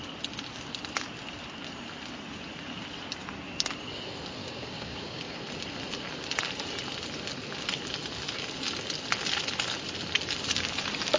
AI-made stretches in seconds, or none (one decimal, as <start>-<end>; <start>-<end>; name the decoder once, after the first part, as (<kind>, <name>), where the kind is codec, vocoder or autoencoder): 4.4-5.2 (codec, DAC)